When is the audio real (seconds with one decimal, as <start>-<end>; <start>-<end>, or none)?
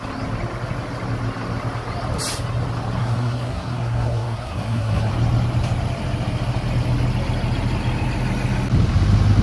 0.0-3.0; 5.1-9.4